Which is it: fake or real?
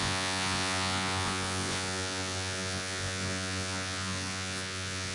fake